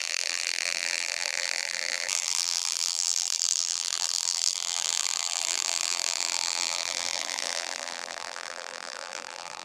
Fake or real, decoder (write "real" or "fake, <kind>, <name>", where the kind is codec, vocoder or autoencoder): fake, vocoder, BigVGAN v2